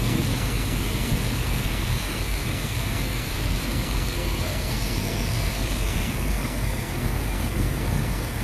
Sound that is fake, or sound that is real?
fake